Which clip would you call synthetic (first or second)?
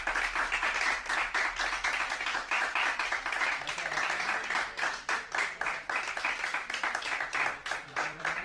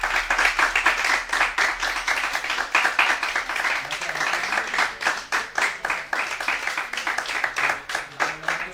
first